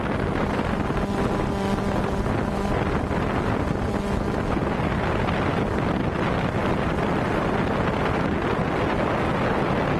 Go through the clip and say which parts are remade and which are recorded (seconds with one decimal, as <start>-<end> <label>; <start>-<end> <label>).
0.0-10.0 recorded